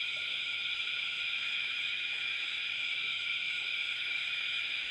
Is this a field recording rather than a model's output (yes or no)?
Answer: no